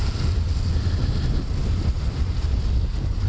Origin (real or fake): real